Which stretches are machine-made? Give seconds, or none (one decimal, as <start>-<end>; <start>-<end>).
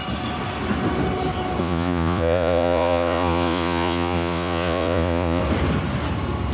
1.6-5.4